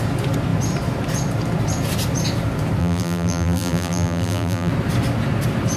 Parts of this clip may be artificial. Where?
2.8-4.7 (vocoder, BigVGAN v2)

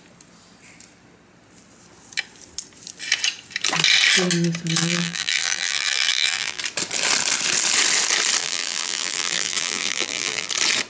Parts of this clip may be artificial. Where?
4.8-6.6 (vocoder, BigVGAN v2); 8.4-10.5